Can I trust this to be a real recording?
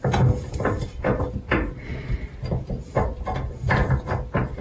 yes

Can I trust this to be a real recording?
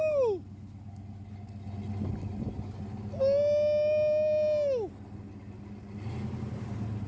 yes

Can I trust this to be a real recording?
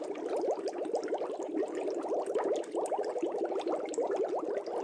yes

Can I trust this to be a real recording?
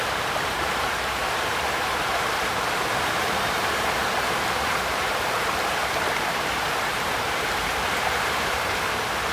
no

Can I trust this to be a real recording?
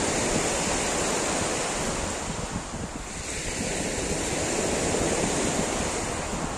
yes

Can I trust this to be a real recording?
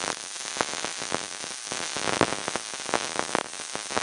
yes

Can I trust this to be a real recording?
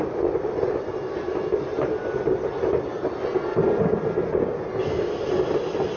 yes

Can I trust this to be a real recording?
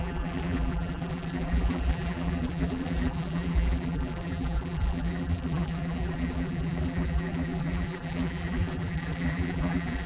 no